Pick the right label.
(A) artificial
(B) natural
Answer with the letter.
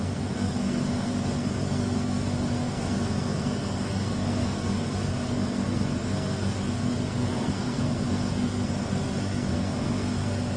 A